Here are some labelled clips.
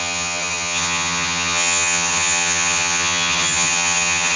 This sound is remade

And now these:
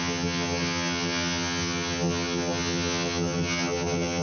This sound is remade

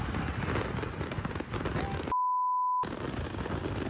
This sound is recorded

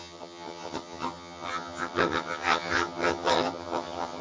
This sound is remade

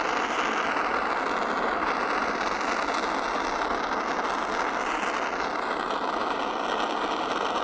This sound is recorded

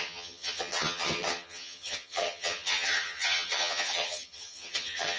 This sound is remade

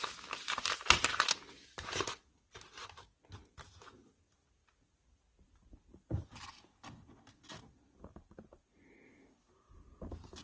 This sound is recorded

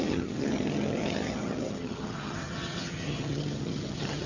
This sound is remade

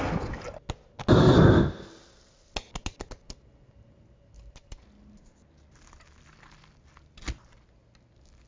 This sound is recorded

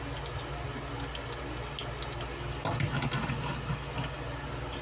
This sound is recorded